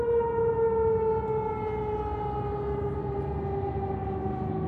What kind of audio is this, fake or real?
real